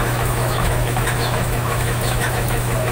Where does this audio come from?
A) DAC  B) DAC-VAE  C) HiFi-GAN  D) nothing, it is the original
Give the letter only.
B